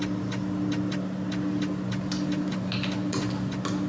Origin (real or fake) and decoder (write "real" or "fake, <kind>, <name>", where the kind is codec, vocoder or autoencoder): real